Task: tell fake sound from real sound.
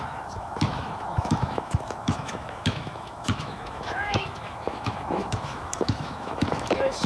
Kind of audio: fake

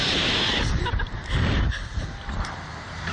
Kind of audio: fake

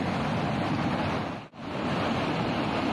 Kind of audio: real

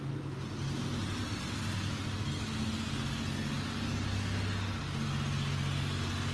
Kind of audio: fake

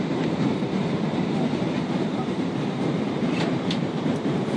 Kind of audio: fake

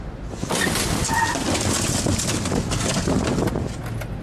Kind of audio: real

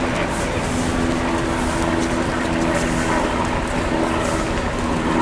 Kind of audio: real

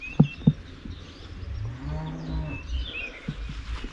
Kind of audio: real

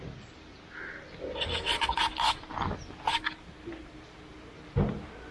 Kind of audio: real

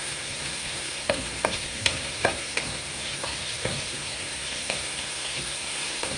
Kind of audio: fake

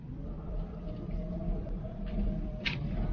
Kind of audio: fake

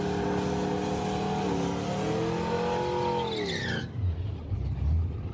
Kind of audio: real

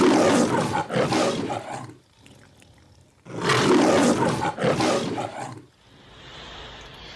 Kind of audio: real